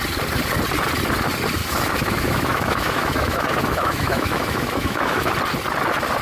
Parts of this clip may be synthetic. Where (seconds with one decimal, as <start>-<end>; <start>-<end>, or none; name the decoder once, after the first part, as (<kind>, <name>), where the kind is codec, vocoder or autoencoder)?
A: 1.6-5.3 (autoencoder, DAC-VAE)